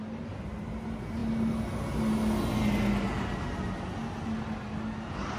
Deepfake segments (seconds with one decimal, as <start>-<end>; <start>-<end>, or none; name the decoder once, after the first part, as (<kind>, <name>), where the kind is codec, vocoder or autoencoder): none